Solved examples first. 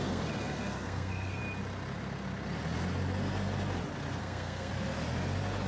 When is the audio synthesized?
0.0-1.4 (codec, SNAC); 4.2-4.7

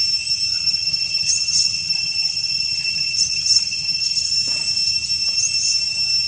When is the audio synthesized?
0.5-4.3 (vocoder, HiFi-GAN)

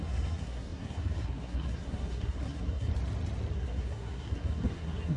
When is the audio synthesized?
0.0-2.9 (codec, SNAC); 3.5-5.2